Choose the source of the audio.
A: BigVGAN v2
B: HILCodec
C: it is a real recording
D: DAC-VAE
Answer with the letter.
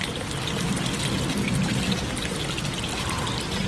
C